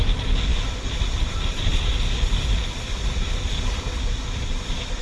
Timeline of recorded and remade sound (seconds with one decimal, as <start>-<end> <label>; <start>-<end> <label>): 0.0-5.0 recorded